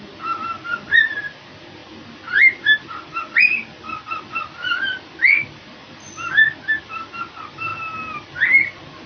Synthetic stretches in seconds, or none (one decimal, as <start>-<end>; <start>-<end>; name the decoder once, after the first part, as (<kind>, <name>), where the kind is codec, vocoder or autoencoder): none